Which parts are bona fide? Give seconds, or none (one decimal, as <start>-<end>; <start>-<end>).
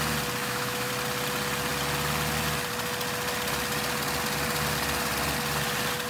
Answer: 0.0-0.4; 0.9-6.1